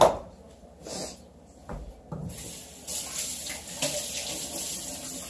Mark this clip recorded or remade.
recorded